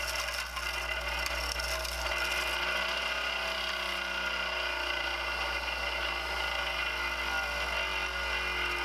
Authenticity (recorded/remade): recorded